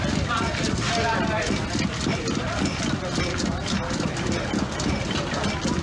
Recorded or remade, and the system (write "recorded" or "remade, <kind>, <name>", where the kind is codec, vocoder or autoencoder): recorded